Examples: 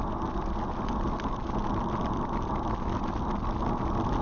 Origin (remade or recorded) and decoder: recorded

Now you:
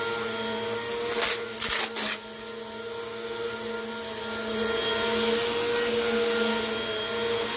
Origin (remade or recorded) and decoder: recorded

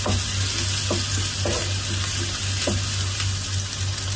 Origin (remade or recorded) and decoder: recorded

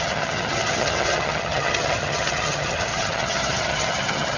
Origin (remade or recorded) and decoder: remade, vocoder, HiFi-GAN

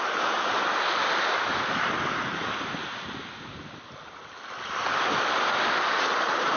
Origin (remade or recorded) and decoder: recorded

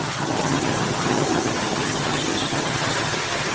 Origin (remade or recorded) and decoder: remade, vocoder, HiFi-GAN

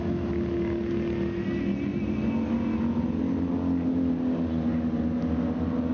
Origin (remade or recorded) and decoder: recorded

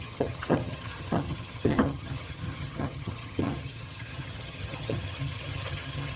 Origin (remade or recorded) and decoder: remade, vocoder, HiFi-GAN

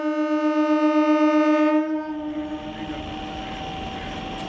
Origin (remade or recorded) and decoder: recorded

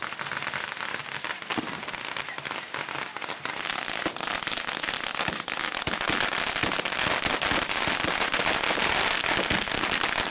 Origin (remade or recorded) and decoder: recorded